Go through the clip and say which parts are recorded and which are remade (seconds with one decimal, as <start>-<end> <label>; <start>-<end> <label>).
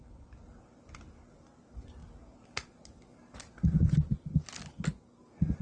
0.0-5.6 recorded